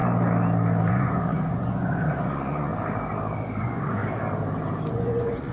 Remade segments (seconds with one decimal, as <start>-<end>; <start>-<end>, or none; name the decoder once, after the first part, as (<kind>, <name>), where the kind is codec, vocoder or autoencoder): 0.9-2.7 (vocoder, Vocos); 3.6-4.0; 4.9-5.5